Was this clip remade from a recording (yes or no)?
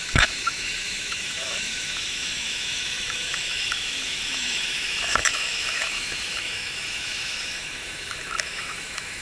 yes